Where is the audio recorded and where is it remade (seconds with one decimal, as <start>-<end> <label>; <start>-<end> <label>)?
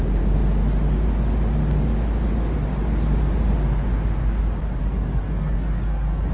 0.0-4.8 recorded; 4.8-6.3 remade